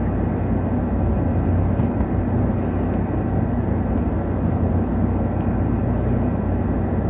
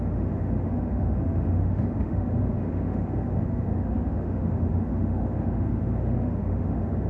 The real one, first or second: first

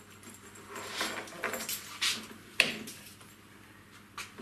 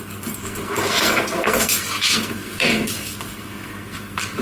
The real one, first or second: first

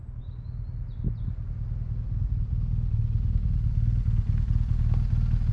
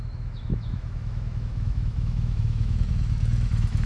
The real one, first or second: first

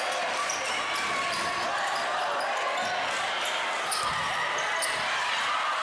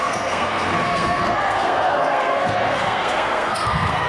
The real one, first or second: first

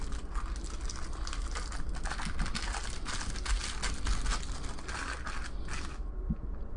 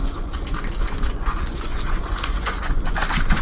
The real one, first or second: first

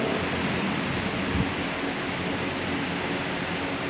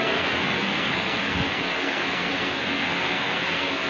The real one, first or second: first